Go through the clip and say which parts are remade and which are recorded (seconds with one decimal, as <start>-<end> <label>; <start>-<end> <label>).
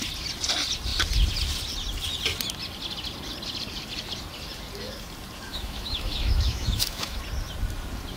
0.0-5.5 recorded; 5.5-7.2 remade; 7.2-8.2 recorded